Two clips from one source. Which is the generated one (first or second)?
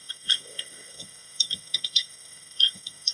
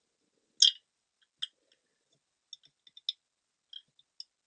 first